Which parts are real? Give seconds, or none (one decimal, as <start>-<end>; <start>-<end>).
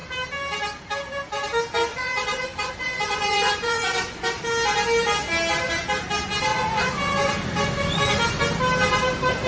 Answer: 0.0-1.9; 4.2-6.5; 7.3-9.5